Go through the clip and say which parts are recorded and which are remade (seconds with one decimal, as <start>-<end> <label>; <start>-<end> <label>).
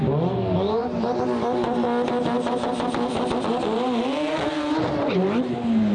0.0-5.9 recorded